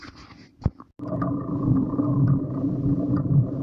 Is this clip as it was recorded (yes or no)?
yes